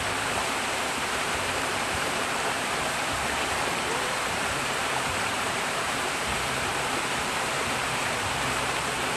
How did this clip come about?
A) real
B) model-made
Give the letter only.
B